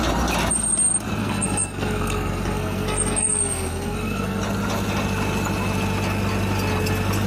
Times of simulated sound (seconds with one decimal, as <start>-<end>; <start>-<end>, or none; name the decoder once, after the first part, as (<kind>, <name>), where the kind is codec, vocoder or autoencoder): 1.2-4.4 (codec, SNAC)